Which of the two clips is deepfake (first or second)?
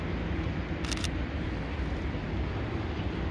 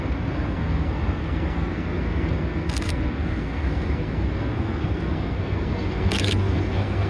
second